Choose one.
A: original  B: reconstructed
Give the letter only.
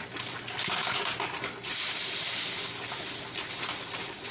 A